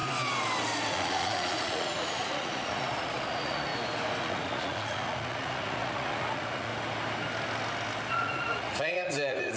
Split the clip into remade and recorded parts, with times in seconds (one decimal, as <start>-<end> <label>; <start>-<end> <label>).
0.0-0.9 recorded; 0.9-3.7 remade; 3.7-4.2 recorded; 4.2-6.7 remade; 6.7-8.1 recorded; 8.1-9.6 remade